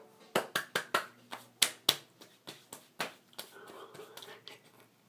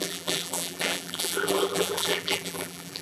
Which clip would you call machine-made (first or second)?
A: second